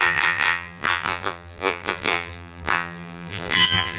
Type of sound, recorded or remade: remade